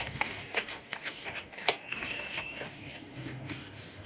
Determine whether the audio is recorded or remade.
remade